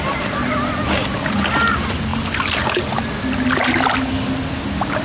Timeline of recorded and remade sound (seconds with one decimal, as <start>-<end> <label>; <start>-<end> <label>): 0.0-5.0 recorded